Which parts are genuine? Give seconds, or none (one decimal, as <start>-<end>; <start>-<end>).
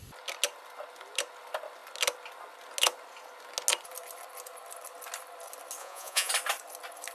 0.0-5.8; 6.3-7.1